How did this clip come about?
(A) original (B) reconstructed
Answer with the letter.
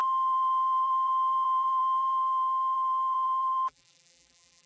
B